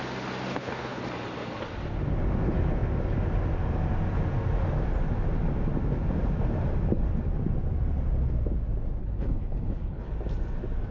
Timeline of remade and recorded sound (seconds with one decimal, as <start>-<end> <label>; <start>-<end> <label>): 0.0-0.5 recorded; 0.5-1.0 remade; 1.0-9.0 recorded; 9.0-10.1 remade; 10.1-10.9 recorded

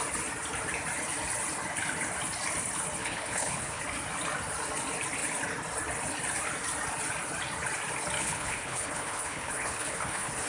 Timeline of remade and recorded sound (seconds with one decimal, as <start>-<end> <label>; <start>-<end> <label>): 0.0-3.0 recorded; 3.0-3.8 remade; 3.8-8.2 recorded; 8.2-10.5 remade

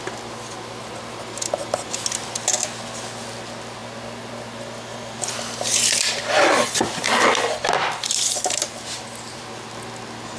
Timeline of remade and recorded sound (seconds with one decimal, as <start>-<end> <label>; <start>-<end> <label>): 0.0-10.4 recorded

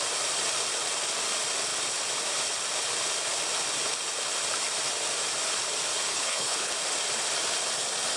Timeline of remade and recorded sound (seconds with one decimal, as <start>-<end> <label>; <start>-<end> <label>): 0.0-6.1 recorded; 6.1-6.7 remade; 6.7-8.2 recorded

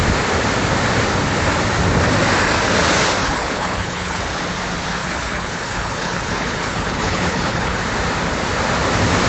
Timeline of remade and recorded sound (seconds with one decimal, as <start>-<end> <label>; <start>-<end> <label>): 0.0-3.2 recorded; 3.2-4.2 remade; 4.2-5.0 recorded; 5.0-7.8 remade; 7.8-9.3 recorded